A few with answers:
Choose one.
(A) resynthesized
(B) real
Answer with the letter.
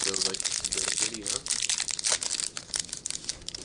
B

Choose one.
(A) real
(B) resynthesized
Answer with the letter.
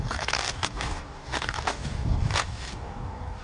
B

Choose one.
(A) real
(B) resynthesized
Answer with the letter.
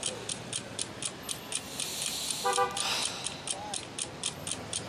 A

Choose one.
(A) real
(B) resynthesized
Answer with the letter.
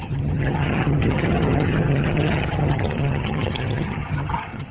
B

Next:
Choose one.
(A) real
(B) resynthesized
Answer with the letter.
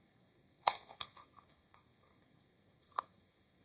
B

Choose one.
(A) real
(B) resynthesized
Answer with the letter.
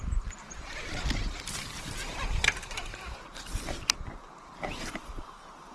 B